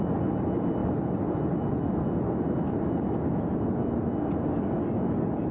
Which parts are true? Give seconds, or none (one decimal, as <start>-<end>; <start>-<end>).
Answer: 0.0-5.5